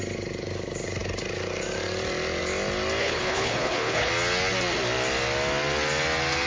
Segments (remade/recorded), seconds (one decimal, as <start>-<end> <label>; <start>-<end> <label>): 0.0-3.0 recorded; 3.0-4.1 remade; 4.1-6.5 recorded